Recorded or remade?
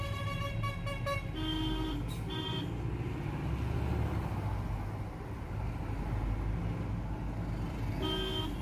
recorded